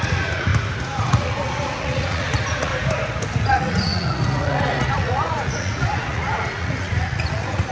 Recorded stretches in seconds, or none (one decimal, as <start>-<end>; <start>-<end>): 0.5-1.0; 2.7-3.5